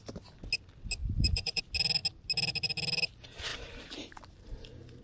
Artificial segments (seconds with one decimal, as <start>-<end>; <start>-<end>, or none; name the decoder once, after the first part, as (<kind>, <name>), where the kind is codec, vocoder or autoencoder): 1.0-1.6 (vocoder, BigVGAN v2); 3.5-5.0